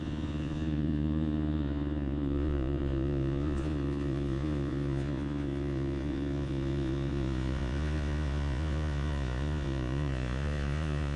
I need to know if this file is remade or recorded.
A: remade